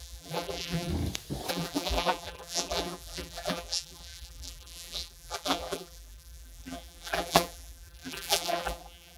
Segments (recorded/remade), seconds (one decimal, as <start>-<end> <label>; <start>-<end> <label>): 0.0-0.9 remade; 0.9-1.5 recorded; 1.5-9.2 remade